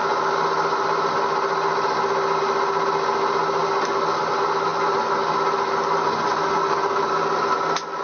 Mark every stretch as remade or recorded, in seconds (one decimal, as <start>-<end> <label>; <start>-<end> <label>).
0.0-8.0 recorded

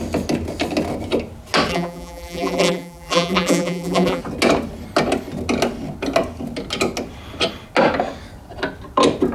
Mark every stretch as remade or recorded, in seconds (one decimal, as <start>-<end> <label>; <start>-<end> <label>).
0.0-1.7 recorded; 1.7-4.2 remade; 4.2-9.3 recorded

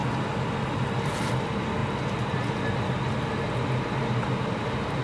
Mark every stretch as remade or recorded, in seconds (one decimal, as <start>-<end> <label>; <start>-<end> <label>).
0.0-1.8 recorded; 1.8-2.4 remade; 2.4-5.0 recorded

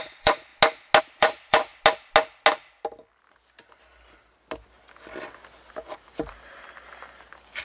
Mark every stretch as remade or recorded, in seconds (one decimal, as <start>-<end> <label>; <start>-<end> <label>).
0.0-0.5 remade; 0.5-1.0 recorded; 1.0-1.7 remade; 1.7-5.7 recorded; 5.7-7.6 remade

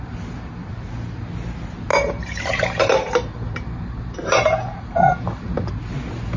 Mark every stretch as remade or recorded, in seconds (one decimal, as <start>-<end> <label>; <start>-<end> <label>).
0.0-1.9 recorded; 1.9-5.7 remade; 5.7-6.4 recorded